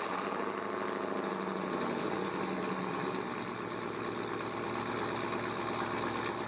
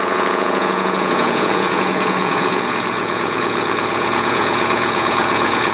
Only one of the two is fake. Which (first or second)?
second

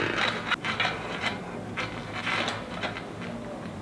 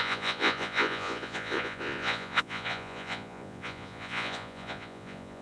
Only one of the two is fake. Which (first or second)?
second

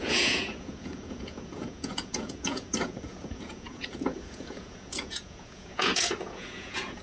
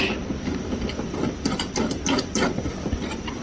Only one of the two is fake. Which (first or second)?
first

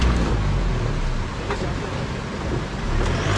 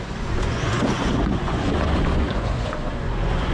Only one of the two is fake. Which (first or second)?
second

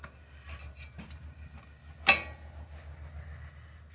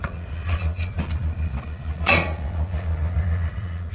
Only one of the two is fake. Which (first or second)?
second